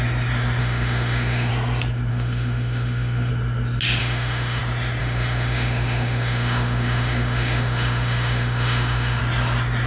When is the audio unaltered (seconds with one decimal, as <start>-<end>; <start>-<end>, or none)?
0.0-0.6; 1.5-2.1; 3.3-4.0; 4.6-5.0; 9.2-9.9